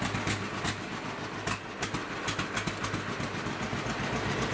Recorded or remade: recorded